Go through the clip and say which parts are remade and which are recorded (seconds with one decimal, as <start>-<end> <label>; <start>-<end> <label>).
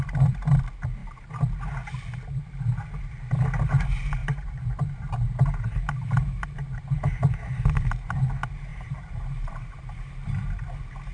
0.0-4.2 recorded; 4.2-8.2 remade; 8.2-8.7 recorded; 8.7-10.1 remade; 10.1-11.1 recorded